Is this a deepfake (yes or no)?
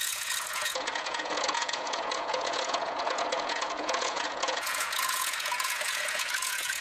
yes